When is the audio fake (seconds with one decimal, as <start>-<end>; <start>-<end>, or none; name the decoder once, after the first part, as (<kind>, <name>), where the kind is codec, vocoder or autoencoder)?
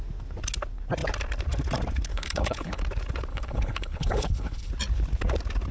2.1-2.8 (codec, HILCodec); 3.3-4.7